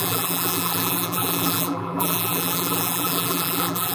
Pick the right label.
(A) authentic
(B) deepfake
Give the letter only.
B